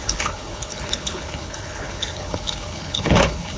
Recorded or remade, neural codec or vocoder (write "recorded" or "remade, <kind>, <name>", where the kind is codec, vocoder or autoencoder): remade, codec, HILCodec